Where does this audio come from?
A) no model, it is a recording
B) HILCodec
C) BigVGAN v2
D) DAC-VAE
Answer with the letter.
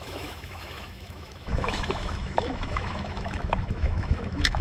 D